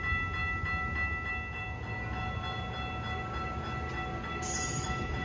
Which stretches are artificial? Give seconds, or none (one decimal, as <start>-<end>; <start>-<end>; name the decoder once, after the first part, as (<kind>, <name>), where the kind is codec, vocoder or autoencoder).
none